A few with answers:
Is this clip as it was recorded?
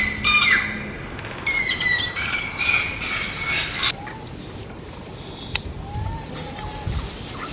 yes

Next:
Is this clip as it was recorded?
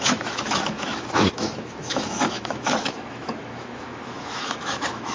no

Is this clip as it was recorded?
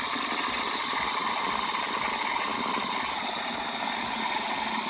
yes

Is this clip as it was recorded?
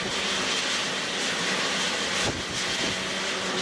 yes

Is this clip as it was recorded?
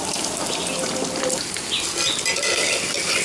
yes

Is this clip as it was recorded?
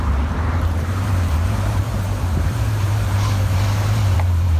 no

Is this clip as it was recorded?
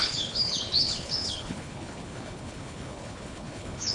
no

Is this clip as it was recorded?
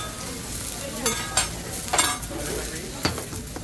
yes